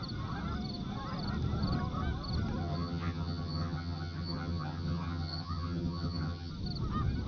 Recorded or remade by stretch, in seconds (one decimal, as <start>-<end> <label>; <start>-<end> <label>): 0.0-2.6 recorded; 2.6-6.5 remade; 6.5-7.3 recorded